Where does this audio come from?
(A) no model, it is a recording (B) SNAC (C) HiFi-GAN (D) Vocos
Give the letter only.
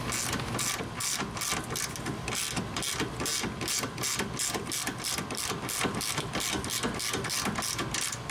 A